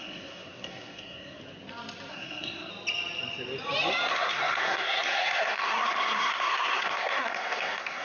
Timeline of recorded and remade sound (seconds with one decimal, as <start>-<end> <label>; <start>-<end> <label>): 0.0-1.4 remade; 1.4-2.1 recorded; 2.1-2.7 remade; 2.7-4.1 recorded; 4.1-8.0 remade